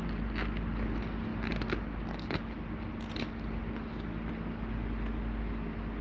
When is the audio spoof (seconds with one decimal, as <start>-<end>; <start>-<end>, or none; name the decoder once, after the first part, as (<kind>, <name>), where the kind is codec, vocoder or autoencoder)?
none